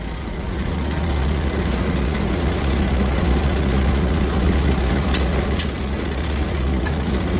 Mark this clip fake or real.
fake